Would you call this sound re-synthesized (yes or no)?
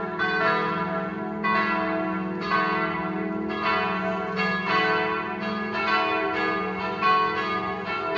no